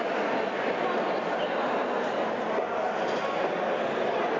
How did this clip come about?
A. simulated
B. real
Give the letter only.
B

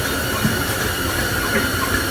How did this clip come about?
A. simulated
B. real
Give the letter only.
B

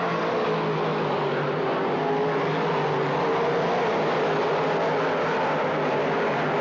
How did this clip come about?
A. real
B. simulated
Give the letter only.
A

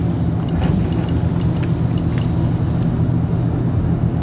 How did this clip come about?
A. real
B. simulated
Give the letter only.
A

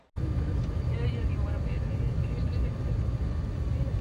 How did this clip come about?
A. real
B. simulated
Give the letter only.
A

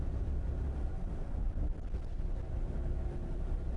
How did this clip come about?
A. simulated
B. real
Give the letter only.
B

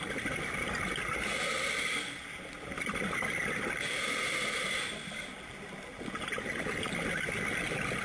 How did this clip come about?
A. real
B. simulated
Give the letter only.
A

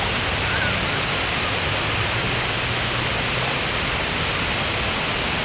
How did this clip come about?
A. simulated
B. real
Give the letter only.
B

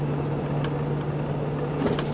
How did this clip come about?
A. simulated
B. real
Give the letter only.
B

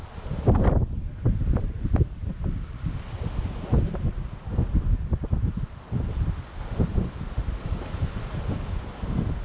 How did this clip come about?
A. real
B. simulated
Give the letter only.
A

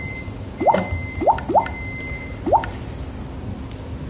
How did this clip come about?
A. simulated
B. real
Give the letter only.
B